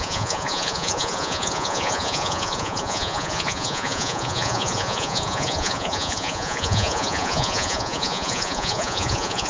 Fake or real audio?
fake